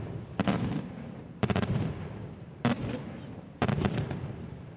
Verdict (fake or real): fake